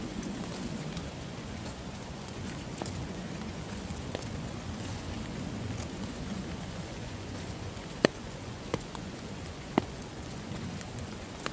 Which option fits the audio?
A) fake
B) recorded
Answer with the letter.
A